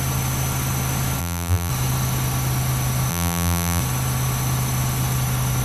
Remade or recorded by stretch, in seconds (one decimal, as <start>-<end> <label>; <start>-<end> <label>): 0.0-1.2 recorded; 1.2-1.7 remade; 1.7-3.1 recorded; 3.1-3.8 remade; 3.8-5.6 recorded